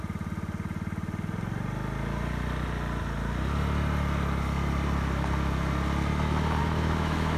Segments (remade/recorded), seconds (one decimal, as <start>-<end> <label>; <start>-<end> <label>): 0.0-6.6 recorded; 6.6-7.4 remade